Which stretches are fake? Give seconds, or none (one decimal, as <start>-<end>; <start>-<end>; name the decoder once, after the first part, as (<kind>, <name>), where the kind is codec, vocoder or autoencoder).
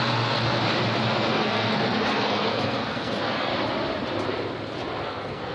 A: 0.0-0.6 (codec, SNAC); 1.3-3.5; 5.0-5.5